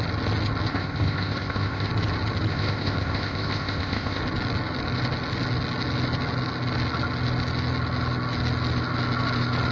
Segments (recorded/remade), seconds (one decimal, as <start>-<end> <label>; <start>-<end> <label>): 0.0-0.7 recorded; 0.7-1.9 remade; 1.9-2.5 recorded; 2.5-4.2 remade; 4.2-9.7 recorded